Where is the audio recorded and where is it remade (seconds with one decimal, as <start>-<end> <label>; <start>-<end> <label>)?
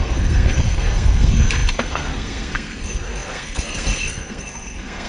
0.0-5.1 remade